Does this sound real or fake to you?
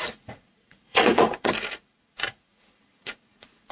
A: fake